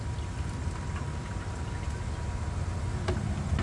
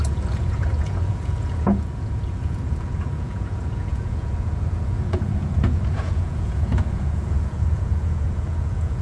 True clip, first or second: first